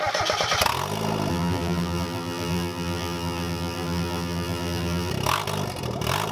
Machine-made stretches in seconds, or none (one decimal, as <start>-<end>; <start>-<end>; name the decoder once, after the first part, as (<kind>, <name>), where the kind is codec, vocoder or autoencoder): 1.3-5.1 (vocoder, BigVGAN v2)